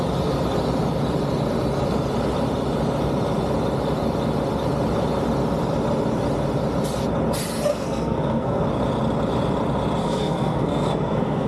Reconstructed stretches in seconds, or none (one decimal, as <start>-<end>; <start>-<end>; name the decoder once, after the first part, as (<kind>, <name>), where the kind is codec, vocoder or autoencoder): 7.7-8.6 (codec, SNAC); 10.0-11.5